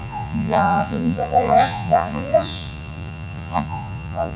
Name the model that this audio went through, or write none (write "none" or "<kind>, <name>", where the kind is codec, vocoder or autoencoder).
vocoder, Vocos